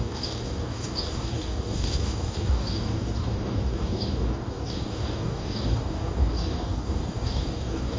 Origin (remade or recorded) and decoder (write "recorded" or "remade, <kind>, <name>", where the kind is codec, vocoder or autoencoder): remade, codec, DAC